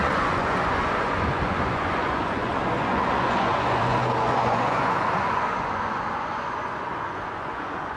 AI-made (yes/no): yes